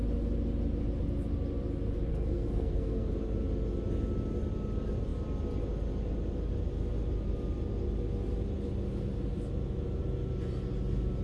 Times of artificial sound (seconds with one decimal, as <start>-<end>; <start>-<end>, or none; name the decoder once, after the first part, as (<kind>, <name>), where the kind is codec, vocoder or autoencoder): 2.1-3.1 (codec, SNAC)